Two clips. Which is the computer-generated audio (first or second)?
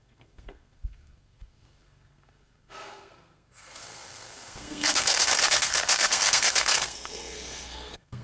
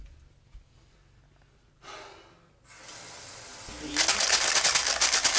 first